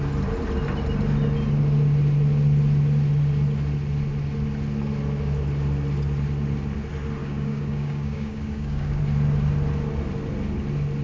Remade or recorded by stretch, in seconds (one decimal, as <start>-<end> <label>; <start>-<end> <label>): 0.0-7.2 recorded; 7.2-9.0 remade; 9.0-11.0 recorded